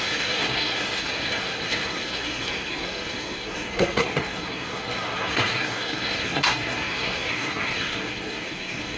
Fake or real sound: fake